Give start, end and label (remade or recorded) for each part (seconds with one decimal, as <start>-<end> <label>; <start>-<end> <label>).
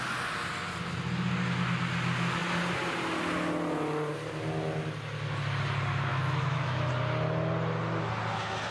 0.0-6.1 recorded; 6.1-6.9 remade; 6.9-8.7 recorded